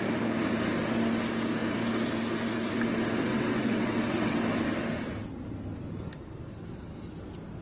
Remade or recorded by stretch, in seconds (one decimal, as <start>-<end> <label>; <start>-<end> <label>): 0.0-3.3 recorded; 3.3-4.4 remade; 4.4-7.6 recorded

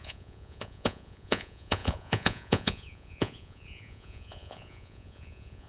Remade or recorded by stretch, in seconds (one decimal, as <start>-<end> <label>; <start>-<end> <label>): 0.0-5.7 remade

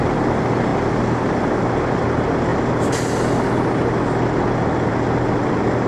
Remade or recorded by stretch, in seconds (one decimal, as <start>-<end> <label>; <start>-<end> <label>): 0.0-5.9 recorded

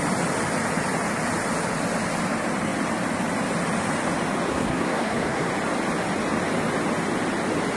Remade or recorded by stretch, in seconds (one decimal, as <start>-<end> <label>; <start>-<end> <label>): 0.0-4.5 recorded; 4.5-5.5 remade; 5.5-7.8 recorded

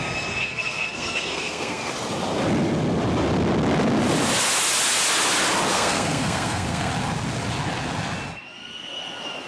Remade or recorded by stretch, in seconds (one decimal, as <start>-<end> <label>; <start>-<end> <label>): 0.0-0.4 recorded; 0.4-1.9 remade; 1.9-5.7 recorded; 5.7-6.9 remade; 6.9-9.5 recorded

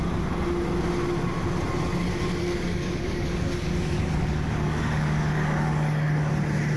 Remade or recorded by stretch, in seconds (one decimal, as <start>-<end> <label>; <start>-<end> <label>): 0.0-2.4 recorded; 2.4-6.3 remade; 6.3-6.8 recorded

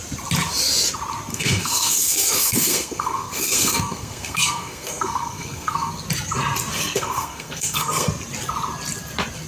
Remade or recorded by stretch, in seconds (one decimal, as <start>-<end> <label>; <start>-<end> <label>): 0.0-1.3 recorded; 1.3-5.9 remade; 5.9-6.7 recorded; 6.7-8.1 remade; 8.1-9.5 recorded

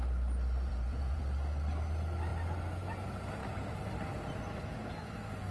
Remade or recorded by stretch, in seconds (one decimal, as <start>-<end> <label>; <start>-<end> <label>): 0.0-0.7 recorded; 0.7-1.2 remade; 1.2-5.5 recorded